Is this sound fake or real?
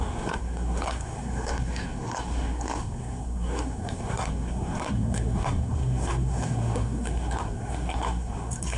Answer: fake